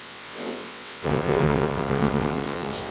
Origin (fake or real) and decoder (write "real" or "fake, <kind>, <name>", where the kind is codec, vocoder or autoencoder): fake, vocoder, WaveNeXt